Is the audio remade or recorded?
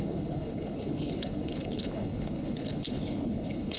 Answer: remade